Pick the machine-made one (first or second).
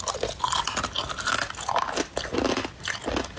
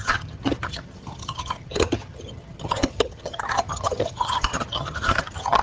second